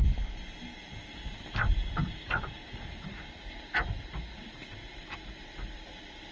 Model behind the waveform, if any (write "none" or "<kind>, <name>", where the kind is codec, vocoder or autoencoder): none